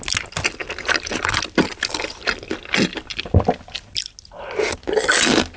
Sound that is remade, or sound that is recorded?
recorded